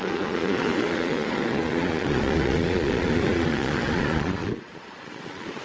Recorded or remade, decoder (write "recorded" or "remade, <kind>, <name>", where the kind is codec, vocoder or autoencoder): remade, vocoder, Vocos